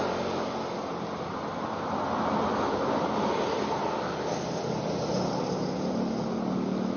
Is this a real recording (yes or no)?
yes